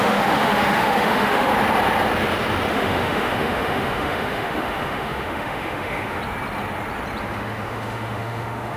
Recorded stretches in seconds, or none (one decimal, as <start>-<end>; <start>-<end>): 1.5-2.7; 6.2-7.2